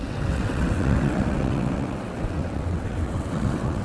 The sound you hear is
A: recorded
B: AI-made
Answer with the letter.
B